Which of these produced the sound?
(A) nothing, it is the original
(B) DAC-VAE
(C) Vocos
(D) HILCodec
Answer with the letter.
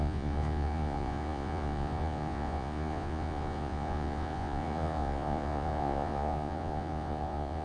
C